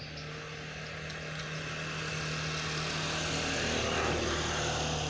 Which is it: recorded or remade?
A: recorded